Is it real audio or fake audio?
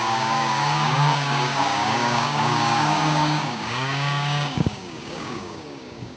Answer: fake